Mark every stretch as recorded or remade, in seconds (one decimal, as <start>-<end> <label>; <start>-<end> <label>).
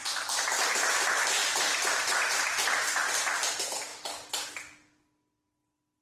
0.0-1.4 recorded; 1.4-2.1 remade; 2.1-6.0 recorded